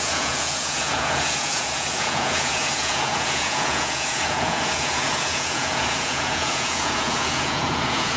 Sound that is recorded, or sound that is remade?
remade